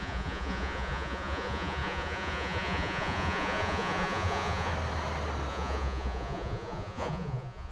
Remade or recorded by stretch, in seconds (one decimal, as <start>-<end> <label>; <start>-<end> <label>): 0.0-4.7 remade; 4.7-5.5 recorded; 5.5-7.7 remade